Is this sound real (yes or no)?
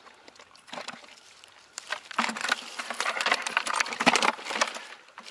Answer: no